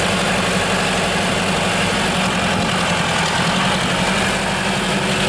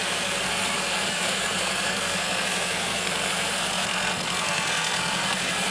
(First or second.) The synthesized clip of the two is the second